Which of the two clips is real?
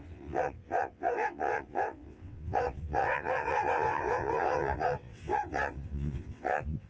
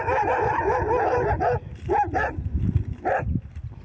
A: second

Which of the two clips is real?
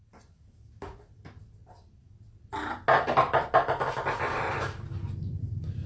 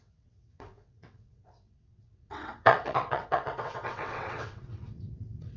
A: first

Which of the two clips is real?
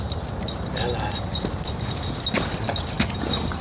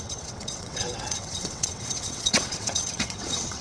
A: first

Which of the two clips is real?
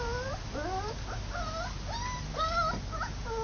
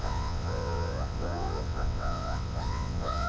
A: first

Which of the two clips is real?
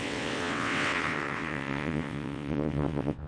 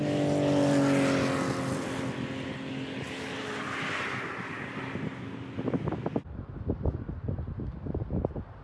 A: second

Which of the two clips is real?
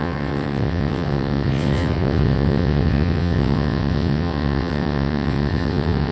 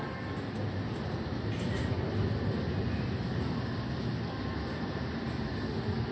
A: second